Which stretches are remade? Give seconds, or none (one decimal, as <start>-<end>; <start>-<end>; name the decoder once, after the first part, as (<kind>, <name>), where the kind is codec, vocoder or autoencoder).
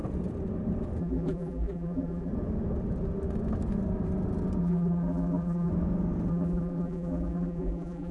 1.0-2.3 (vocoder, BigVGAN v2); 4.6-5.7; 6.3-8.1